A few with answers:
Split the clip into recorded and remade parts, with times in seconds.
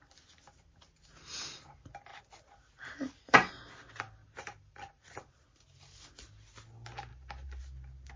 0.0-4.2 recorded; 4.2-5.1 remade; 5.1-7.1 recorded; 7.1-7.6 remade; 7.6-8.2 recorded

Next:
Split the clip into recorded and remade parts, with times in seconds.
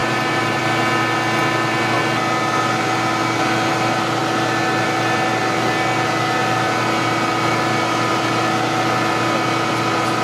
0.0-0.6 remade; 0.6-10.2 recorded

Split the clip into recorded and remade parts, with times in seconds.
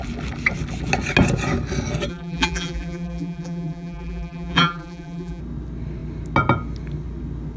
0.0-2.1 recorded; 2.1-5.4 remade; 5.4-7.6 recorded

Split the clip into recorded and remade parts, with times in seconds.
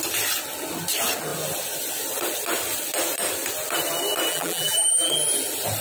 0.0-4.3 recorded; 4.3-5.1 remade; 5.1-5.8 recorded